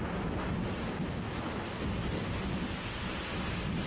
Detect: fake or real real